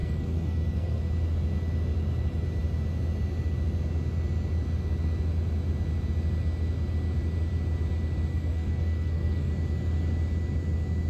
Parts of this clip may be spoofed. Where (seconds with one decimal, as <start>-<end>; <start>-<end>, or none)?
0.0-1.0; 8.3-9.5